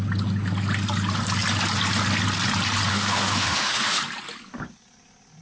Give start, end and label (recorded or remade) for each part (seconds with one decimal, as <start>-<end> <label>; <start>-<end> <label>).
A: 0.0-2.9 recorded; 2.9-4.0 remade; 4.0-5.4 recorded